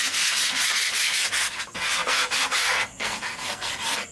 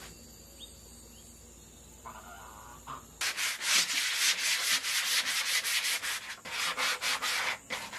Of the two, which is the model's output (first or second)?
first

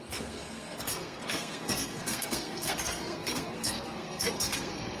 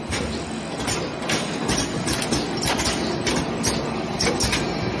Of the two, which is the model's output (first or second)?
first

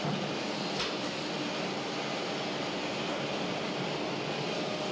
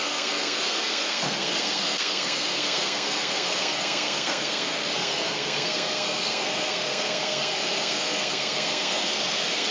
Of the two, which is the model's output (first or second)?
second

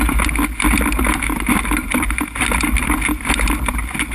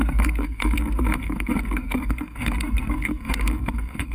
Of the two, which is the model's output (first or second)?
second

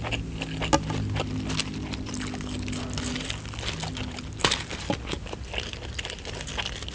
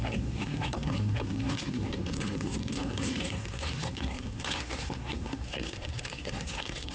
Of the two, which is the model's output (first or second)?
second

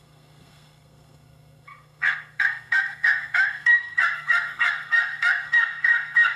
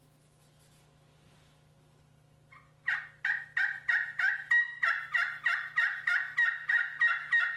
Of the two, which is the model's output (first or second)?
first